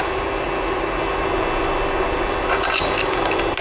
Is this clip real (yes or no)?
yes